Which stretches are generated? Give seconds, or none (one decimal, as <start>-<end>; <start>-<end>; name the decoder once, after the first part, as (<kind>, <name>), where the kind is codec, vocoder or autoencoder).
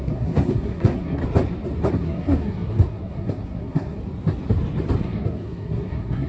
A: 0.0-1.2 (codec, SNAC); 1.9-4.0; 5.0-6.3